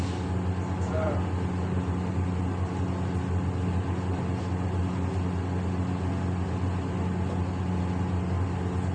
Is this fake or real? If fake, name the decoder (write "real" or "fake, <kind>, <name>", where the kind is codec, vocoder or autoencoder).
real